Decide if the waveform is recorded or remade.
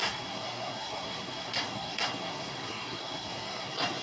remade